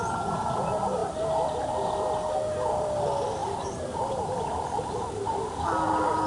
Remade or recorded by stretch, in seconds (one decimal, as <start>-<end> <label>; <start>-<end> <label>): 0.0-6.3 recorded